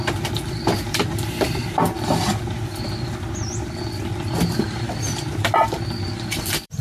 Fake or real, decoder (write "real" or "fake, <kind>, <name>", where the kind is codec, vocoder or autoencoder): fake, vocoder, BigVGAN v2